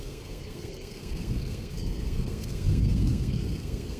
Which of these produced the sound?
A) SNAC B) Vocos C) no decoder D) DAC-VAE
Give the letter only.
A